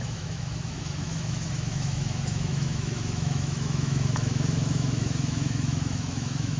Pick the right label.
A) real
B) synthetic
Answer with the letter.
B